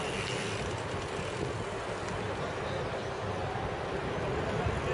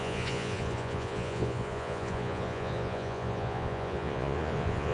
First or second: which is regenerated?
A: second